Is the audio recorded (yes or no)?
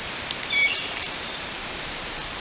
no